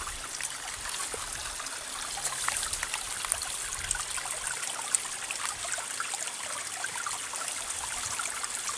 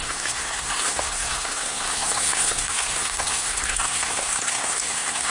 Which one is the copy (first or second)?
second